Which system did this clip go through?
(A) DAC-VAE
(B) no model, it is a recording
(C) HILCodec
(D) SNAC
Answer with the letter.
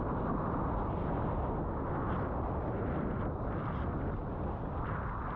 B